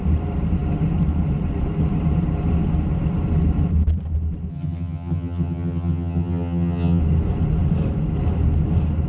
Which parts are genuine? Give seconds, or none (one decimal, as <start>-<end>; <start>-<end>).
0.0-4.5; 7.0-9.1